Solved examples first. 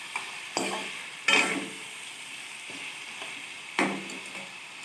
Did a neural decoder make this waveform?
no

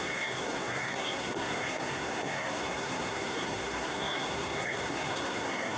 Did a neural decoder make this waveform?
yes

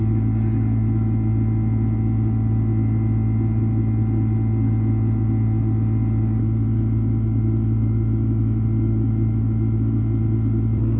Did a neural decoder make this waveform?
no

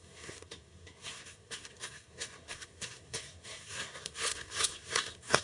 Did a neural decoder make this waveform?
yes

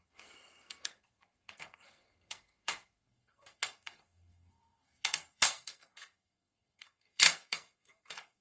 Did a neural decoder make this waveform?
yes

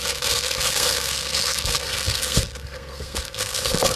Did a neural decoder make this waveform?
yes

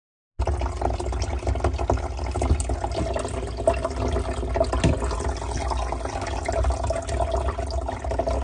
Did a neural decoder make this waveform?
no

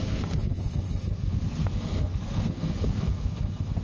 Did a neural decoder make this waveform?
yes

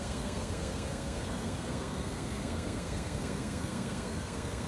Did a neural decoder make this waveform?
yes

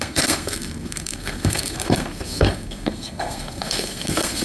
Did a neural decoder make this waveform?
yes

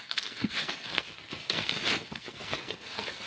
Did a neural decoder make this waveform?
yes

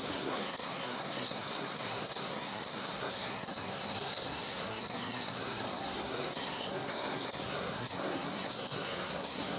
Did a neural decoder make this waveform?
yes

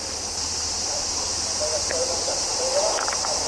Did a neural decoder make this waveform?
no